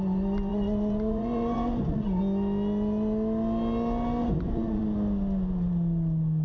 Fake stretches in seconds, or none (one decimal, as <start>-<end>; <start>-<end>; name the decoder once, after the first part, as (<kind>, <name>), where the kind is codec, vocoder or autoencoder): 0.5-2.2 (vocoder, Vocos); 4.2-4.8

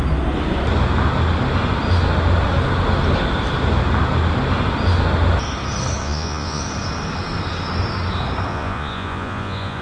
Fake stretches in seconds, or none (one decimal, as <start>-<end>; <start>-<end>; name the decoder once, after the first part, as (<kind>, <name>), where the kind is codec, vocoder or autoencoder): 6.0-6.6 (vocoder, Vocos); 8.5-9.8